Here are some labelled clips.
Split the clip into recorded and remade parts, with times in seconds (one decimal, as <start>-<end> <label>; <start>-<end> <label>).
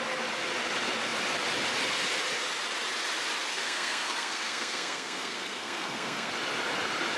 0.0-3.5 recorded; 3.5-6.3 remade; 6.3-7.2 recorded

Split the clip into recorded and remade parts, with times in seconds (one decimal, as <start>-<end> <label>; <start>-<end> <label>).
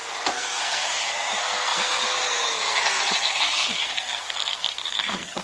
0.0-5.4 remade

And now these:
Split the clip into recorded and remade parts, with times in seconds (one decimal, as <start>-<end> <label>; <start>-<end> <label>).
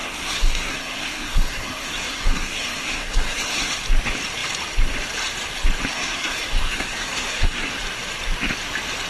0.0-3.7 remade; 3.7-5.9 recorded; 5.9-7.7 remade; 7.7-9.1 recorded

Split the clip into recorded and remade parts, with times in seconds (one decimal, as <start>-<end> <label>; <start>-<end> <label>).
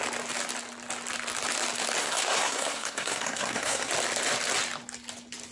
0.0-2.0 recorded; 2.0-3.9 remade; 3.9-5.5 recorded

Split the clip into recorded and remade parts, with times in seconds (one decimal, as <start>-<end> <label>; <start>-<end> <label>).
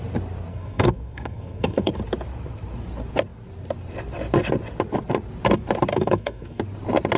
0.0-0.5 recorded; 0.5-1.9 remade; 1.9-5.9 recorded; 5.9-6.6 remade; 6.6-7.2 recorded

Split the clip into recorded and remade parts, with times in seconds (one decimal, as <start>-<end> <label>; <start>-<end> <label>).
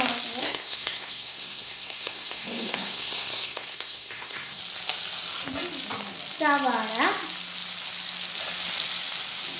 0.0-0.4 recorded; 0.4-4.6 remade; 4.6-9.6 recorded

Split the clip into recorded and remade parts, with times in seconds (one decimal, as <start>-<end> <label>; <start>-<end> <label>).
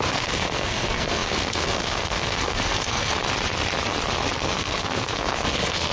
0.0-3.1 remade; 3.1-4.4 recorded; 4.4-5.9 remade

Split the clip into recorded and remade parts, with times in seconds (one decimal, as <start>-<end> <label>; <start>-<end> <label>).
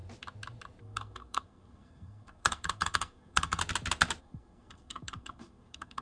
0.0-0.8 recorded; 0.8-3.6 remade; 3.6-4.2 recorded; 4.2-6.0 remade